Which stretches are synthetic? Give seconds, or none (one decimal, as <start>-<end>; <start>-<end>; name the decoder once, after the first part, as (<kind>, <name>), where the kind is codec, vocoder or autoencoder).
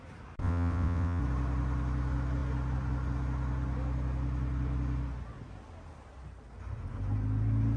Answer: 0.4-1.2 (vocoder, WaveNeXt)